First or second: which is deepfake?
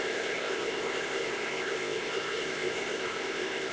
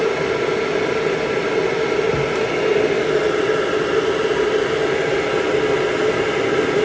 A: first